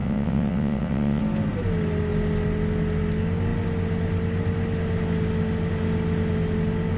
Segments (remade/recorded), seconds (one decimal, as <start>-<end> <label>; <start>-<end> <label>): 0.0-1.2 remade; 1.2-7.0 recorded